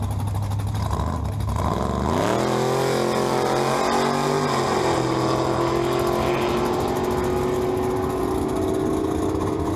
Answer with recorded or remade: recorded